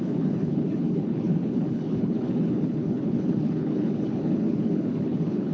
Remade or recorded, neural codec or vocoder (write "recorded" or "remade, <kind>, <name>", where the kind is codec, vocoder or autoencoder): remade, codec, HILCodec